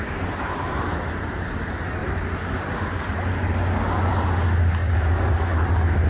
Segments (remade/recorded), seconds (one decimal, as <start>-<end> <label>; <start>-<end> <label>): 0.0-2.0 recorded; 2.0-2.8 remade; 2.8-6.1 recorded